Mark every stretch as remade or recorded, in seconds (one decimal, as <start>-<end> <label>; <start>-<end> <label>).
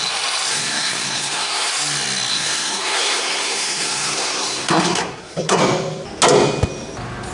0.0-0.5 recorded; 0.5-1.7 remade; 1.7-2.3 recorded; 2.3-5.6 remade; 5.6-7.3 recorded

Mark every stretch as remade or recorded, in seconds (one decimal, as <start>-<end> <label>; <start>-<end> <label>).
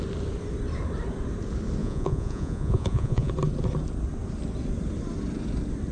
0.0-1.8 recorded; 1.8-3.3 remade; 3.3-5.9 recorded